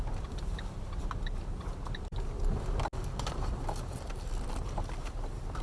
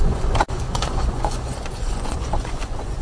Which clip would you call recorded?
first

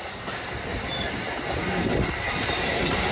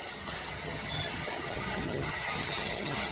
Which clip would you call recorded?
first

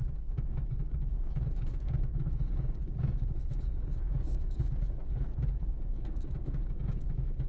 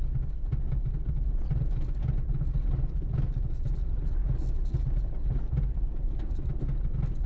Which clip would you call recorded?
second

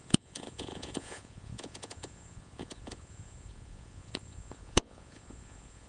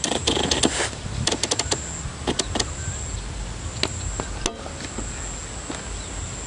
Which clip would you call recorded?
second